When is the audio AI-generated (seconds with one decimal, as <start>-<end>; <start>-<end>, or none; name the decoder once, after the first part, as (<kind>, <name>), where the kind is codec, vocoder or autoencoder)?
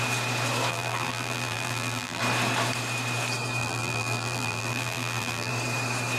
0.7-2.2 (vocoder, BigVGAN v2); 3.6-5.5